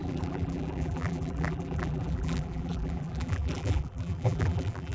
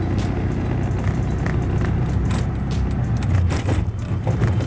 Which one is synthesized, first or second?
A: first